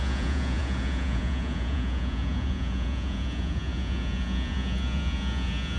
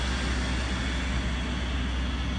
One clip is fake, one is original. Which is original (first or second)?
second